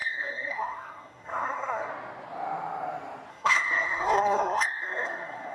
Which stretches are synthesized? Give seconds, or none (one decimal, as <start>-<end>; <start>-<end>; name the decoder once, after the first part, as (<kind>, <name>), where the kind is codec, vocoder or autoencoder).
0.0-1.9 (codec, SNAC); 3.3-5.5